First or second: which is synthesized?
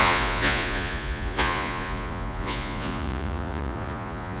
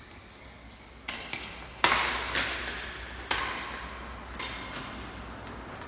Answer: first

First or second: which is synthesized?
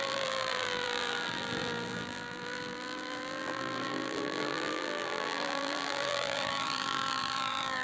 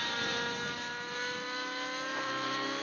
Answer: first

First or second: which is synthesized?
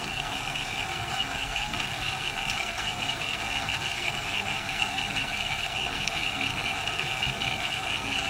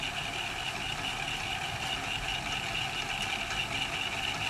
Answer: first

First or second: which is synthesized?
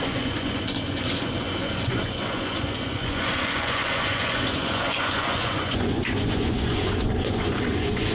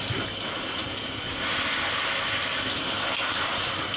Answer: first